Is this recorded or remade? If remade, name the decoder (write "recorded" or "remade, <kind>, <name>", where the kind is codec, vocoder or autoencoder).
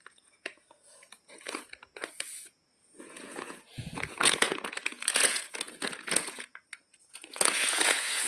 remade, vocoder, Vocos